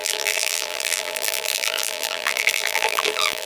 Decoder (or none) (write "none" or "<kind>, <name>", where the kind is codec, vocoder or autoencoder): vocoder, BigVGAN v2